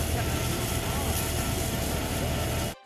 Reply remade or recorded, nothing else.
recorded